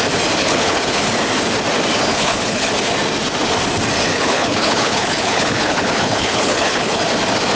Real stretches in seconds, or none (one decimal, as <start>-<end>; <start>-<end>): 0.0-0.4; 1.0-2.1; 2.7-4.1; 7.0-7.6